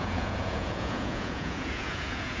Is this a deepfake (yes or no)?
yes